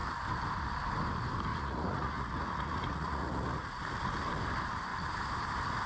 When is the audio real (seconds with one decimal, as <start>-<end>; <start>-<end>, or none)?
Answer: 0.0-1.5; 3.8-5.9

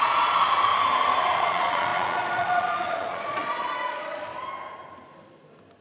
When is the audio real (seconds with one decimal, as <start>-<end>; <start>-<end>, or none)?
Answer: 0.7-1.4; 4.3-5.8

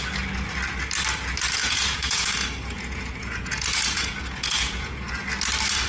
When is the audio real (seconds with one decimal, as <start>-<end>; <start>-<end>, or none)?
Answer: 0.0-1.6; 5.1-5.9